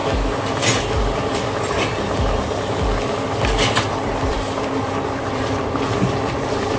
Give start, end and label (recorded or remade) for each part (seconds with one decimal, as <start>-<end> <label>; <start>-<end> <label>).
0.0-4.1 recorded; 4.1-6.8 remade